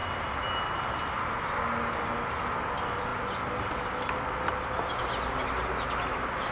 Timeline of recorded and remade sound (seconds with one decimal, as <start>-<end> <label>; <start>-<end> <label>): 0.0-6.5 recorded